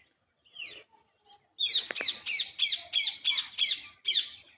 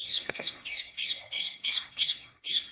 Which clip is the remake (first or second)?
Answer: second